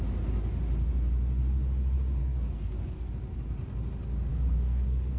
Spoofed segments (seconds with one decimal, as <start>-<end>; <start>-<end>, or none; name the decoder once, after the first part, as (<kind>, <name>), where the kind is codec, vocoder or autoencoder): 2.2-3.1 (codec, SNAC); 4.3-5.2